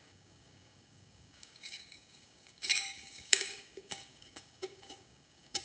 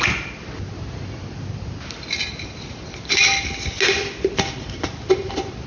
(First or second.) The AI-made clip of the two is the first